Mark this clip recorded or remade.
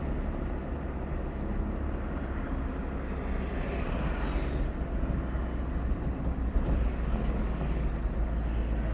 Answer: recorded